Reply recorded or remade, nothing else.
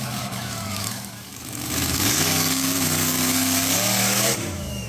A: remade